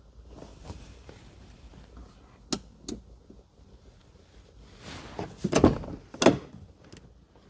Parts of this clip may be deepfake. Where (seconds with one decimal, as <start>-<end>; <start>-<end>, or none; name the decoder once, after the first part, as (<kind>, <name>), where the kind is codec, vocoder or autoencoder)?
0.5-1.7 (vocoder, BigVGAN v2)